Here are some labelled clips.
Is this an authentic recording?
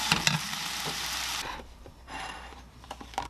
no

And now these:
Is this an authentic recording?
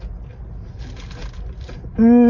yes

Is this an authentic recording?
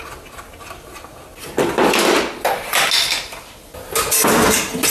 yes